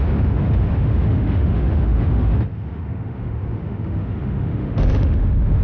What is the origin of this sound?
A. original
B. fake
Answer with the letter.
B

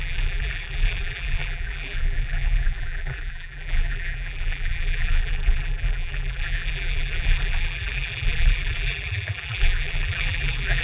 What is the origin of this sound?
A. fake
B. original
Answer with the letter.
A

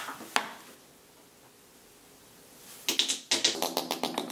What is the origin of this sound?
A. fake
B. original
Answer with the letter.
B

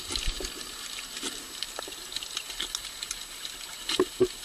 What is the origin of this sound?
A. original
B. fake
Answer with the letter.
A